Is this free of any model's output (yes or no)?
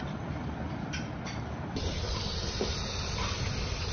yes